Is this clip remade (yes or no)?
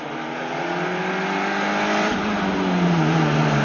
no